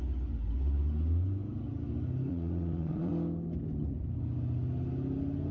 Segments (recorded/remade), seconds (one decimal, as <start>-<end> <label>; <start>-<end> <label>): 0.0-2.3 recorded; 2.3-3.1 remade; 3.1-5.5 recorded